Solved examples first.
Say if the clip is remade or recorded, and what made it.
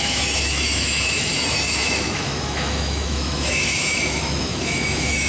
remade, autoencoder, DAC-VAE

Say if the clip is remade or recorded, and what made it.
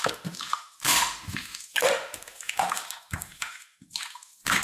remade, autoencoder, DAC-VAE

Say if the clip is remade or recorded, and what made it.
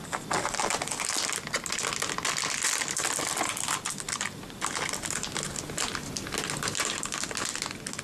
recorded